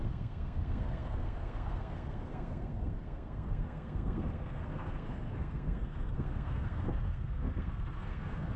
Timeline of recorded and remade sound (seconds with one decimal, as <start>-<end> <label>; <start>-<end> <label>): 0.0-8.6 remade